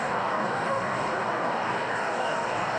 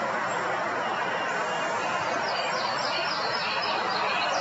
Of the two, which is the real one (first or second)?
second